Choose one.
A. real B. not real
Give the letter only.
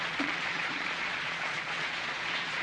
B